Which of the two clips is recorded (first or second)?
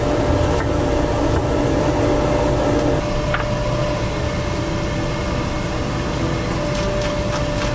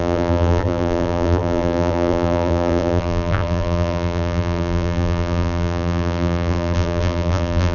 first